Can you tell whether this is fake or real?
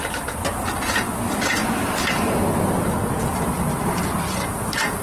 real